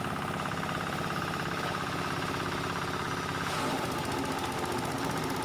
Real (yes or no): yes